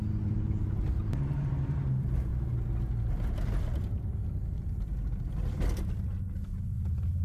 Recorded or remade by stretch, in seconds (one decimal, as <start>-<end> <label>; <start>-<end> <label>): 0.0-2.3 remade; 2.3-6.6 recorded; 6.6-7.2 remade